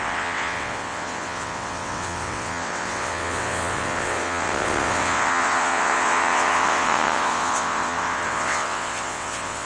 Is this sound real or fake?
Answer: fake